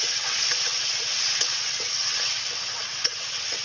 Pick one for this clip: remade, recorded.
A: remade